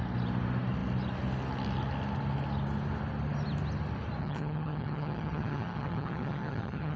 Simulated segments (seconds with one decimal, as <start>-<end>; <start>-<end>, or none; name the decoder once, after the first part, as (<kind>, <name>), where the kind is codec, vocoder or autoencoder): 4.2-7.0 (vocoder, HiFi-GAN)